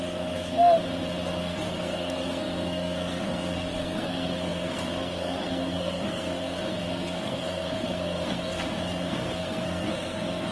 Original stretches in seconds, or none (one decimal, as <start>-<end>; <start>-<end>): 0.8-1.4